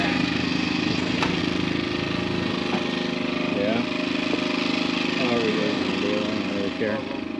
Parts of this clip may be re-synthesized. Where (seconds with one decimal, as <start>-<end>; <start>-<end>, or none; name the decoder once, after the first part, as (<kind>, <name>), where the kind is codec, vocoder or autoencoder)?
0.0-1.4 (codec, SNAC); 5.5-5.9